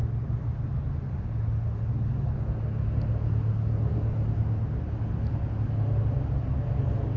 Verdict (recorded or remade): recorded